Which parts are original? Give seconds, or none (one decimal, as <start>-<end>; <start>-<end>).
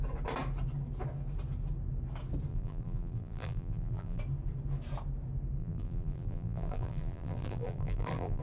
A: 0.0-2.5; 4.2-5.6